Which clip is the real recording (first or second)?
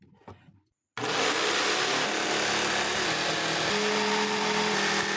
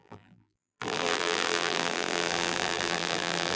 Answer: first